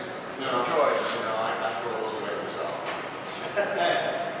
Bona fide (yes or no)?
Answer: yes